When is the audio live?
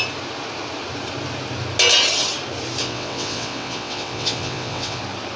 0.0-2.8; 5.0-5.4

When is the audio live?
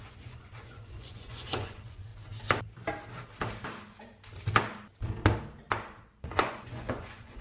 2.1-6.2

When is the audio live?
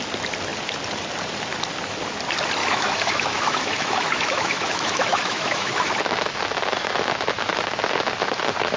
0.0-2.6; 5.9-8.8